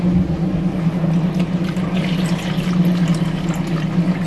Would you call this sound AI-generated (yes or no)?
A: no